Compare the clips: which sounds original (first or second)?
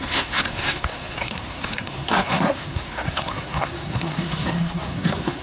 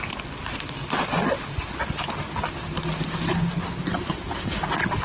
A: second